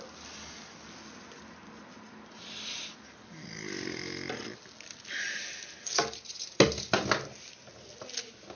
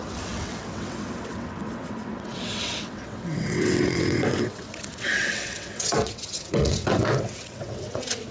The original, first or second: first